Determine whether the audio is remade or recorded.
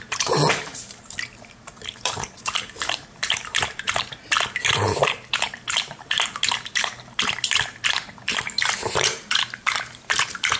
remade